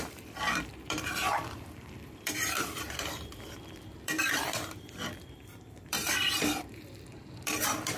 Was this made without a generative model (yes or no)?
no